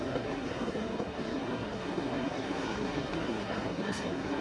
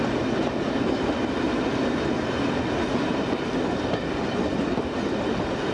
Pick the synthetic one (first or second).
first